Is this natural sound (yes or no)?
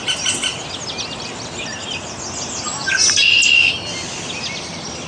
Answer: yes